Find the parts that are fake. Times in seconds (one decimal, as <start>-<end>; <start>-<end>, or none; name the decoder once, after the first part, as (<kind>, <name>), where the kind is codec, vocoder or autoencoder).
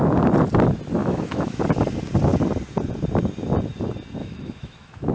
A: 1.0-1.6 (autoencoder, DAC-VAE); 4.2-5.1